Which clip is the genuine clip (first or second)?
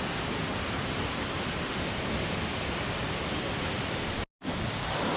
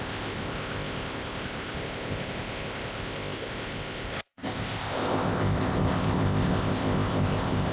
first